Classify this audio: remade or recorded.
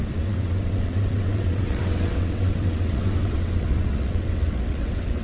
remade